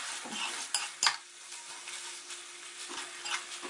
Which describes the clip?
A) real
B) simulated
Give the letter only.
A